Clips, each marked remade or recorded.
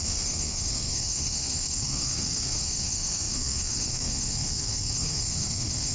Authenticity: remade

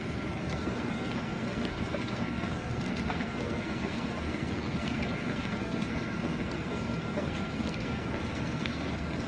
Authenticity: remade